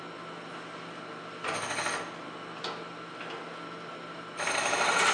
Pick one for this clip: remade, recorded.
recorded